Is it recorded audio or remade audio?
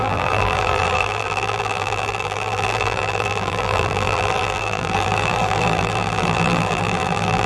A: remade